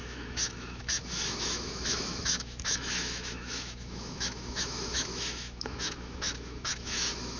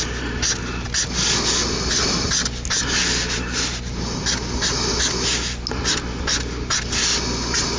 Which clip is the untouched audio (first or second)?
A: second